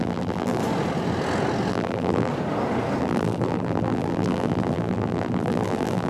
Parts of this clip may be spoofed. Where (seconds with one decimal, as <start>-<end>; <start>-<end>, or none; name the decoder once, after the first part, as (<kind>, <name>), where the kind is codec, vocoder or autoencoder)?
0.0-0.6 (vocoder, BigVGAN v2); 1.7-2.3; 3.0-6.1